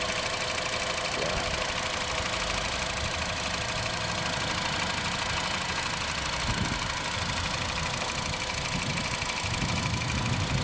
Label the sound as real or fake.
real